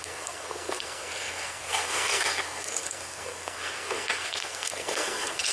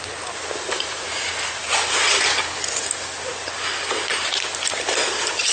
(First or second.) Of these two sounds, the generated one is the first